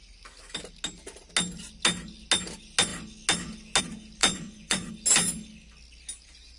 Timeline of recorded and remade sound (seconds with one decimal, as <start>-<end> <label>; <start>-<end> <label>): 0.0-4.2 recorded; 4.2-4.9 remade; 4.9-6.6 recorded